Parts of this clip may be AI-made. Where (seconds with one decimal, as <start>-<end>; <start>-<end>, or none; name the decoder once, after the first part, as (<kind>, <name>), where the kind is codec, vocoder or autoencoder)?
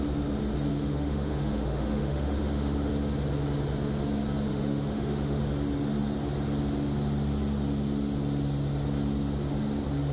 0.7-2.9 (autoencoder, DAC-VAE); 4.5-5.4